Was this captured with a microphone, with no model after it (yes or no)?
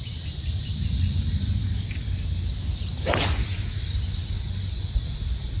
yes